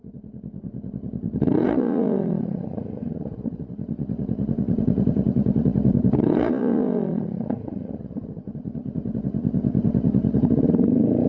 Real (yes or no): no